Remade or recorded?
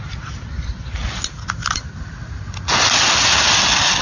recorded